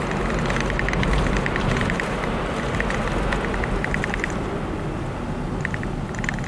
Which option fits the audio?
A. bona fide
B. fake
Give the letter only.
A